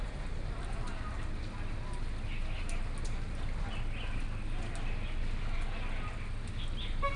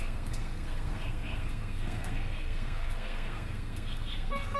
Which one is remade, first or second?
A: second